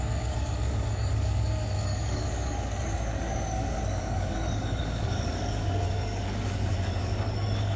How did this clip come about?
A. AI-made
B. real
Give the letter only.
A